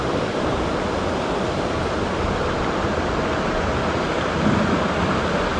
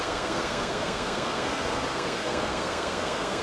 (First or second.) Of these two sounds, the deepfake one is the second